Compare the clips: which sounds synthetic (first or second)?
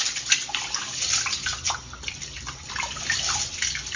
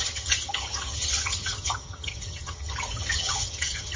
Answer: second